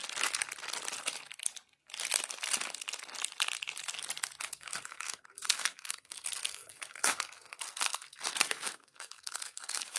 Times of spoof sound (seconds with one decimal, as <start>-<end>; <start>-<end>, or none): 4.5-10.0